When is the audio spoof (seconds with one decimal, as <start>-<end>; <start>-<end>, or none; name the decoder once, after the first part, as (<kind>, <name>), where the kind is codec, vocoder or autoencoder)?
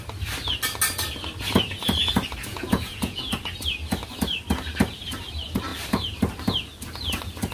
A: 2.5-3.2 (vocoder, Vocos)